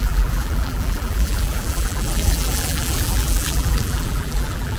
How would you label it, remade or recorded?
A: remade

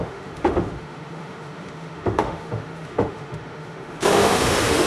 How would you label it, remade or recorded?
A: remade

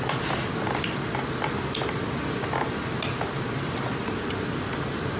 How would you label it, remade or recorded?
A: recorded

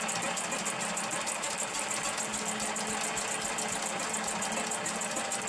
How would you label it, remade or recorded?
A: recorded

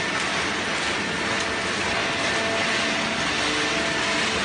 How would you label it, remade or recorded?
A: recorded